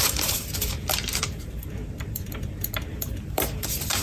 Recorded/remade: remade